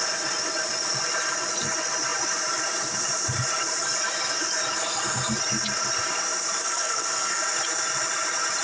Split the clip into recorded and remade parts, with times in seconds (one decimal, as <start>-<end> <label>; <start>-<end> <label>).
0.0-6.6 recorded; 6.6-7.4 remade; 7.4-8.6 recorded